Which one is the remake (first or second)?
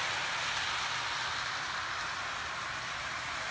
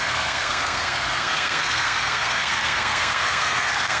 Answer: second